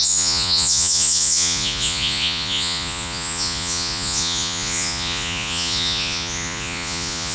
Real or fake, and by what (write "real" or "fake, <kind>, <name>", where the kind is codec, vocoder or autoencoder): fake, vocoder, Vocos